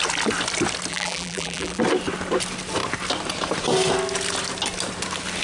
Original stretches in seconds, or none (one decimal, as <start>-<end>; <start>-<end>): 0.0-0.9; 1.8-5.4